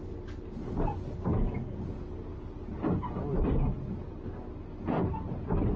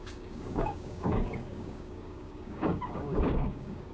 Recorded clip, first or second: first